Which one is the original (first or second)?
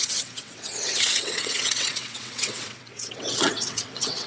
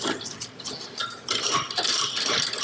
second